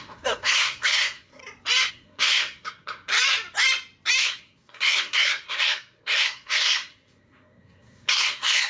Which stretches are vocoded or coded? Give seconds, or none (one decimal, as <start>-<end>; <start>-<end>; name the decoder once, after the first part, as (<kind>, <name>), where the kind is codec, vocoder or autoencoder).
0.0-1.4 (codec, SNAC); 1.9-3.1; 4.2-8.7